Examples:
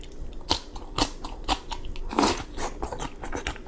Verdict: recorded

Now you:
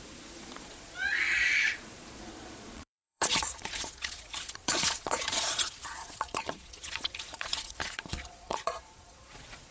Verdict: remade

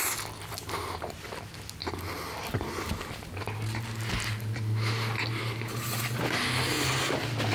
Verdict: recorded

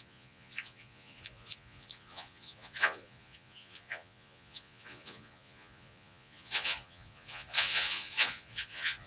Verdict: remade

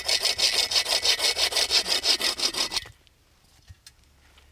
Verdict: recorded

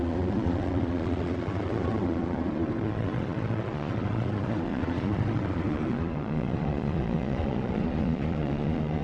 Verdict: remade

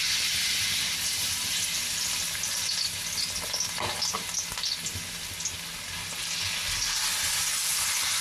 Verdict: recorded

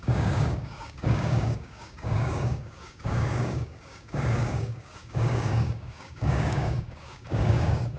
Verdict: remade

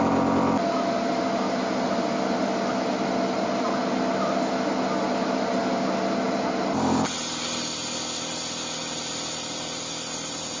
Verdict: recorded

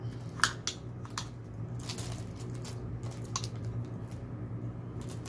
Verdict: recorded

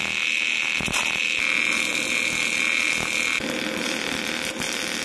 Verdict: recorded